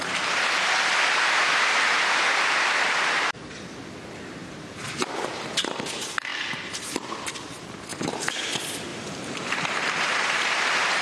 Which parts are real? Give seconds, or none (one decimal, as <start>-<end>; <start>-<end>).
0.0-4.4; 5.2-7.9; 8.5-8.9